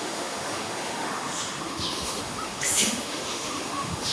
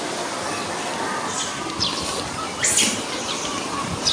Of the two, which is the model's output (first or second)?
first